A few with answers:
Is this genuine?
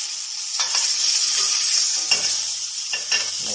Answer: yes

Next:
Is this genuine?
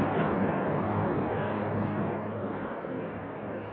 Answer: no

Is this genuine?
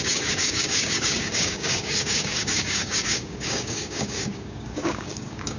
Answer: no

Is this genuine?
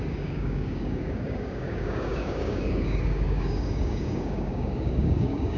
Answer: no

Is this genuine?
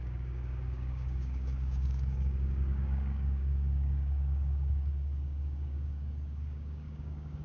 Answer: no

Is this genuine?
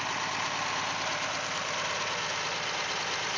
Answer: yes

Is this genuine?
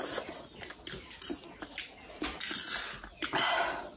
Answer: yes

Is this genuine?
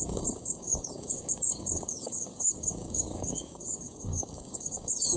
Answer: no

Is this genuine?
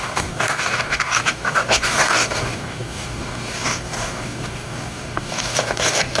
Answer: no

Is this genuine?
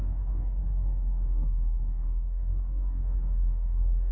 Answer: no